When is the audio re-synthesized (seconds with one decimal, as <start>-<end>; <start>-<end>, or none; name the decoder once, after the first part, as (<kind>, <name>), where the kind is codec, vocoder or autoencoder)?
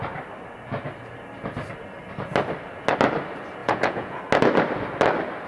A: 3.6-4.2 (vocoder, Vocos)